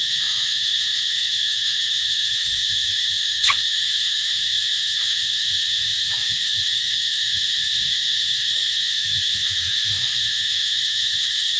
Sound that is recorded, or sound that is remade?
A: remade